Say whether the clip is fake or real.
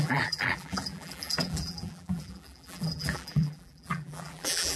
fake